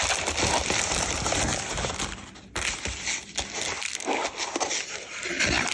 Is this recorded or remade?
recorded